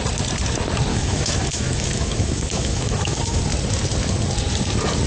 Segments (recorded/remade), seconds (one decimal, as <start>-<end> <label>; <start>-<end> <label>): 0.0-0.9 recorded; 0.9-3.4 remade; 3.4-5.1 recorded